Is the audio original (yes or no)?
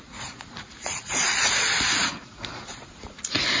no